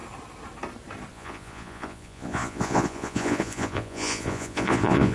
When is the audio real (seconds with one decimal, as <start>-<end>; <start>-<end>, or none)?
0.0-1.1